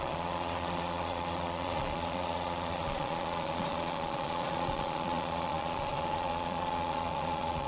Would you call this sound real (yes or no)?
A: no